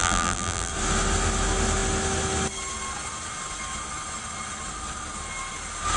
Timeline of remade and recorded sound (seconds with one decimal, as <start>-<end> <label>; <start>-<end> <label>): 0.0-0.7 remade; 0.7-6.0 recorded